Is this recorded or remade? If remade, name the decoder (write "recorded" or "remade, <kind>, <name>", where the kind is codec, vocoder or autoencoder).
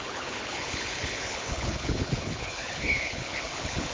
remade, codec, HILCodec